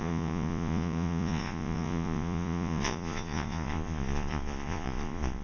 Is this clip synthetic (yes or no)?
yes